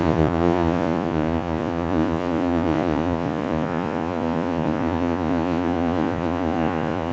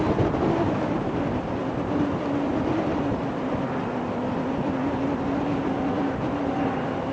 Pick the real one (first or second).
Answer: second